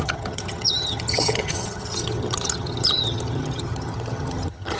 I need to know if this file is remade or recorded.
remade